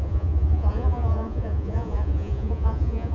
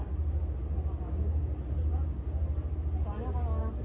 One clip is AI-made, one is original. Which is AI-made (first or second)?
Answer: first